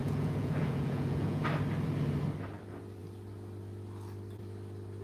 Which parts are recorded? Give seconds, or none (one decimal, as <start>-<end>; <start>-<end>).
1.4-5.0